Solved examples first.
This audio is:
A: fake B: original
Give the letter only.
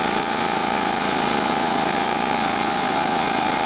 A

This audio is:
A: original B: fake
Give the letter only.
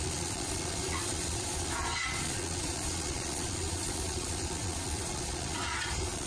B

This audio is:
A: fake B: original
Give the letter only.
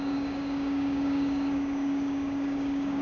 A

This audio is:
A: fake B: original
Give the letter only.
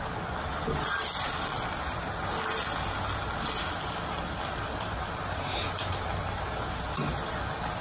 B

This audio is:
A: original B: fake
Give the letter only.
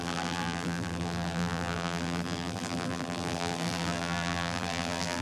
B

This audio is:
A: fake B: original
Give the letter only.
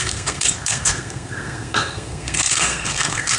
A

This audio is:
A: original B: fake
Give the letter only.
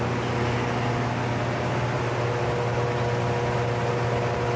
A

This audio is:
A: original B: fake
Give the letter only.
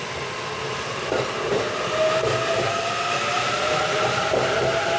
A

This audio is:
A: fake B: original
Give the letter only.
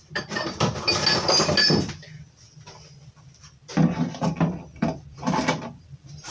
B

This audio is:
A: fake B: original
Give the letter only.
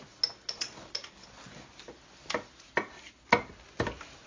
B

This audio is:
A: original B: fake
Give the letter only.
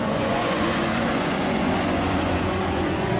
B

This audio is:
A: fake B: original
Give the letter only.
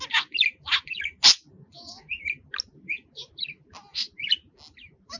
B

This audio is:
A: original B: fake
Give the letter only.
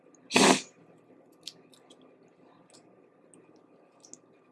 A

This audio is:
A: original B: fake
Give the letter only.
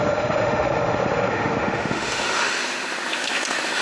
B